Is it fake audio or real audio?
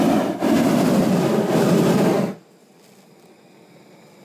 real